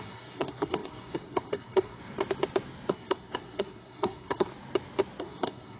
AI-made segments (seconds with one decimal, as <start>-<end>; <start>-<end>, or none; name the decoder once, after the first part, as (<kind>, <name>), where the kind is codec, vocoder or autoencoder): 0.0-2.0 (codec, SNAC); 2.9-4.5; 5.2-5.8